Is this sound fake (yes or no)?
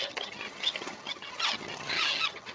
yes